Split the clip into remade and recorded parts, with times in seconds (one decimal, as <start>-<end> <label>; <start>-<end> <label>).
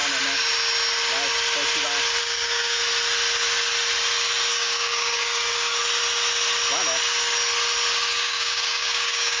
0.0-2.2 recorded; 2.2-2.8 remade; 2.8-4.5 recorded; 4.5-5.8 remade; 5.8-8.1 recorded; 8.1-9.4 remade